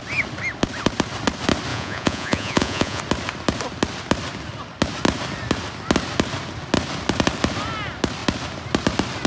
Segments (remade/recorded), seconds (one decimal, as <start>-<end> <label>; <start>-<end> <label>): 0.0-1.7 recorded; 1.7-3.0 remade; 3.0-9.3 recorded